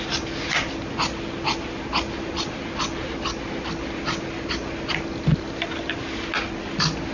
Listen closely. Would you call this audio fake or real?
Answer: real